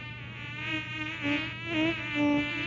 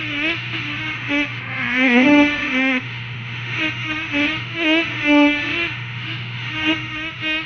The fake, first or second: second